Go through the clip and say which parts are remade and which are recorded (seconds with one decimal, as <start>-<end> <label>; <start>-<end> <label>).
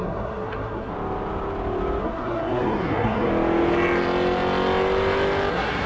0.0-0.9 remade; 0.9-2.0 recorded; 2.0-3.3 remade; 3.3-5.5 recorded; 5.5-5.9 remade